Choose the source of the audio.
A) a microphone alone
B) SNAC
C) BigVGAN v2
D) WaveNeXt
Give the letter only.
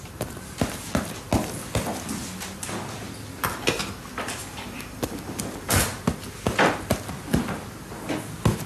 A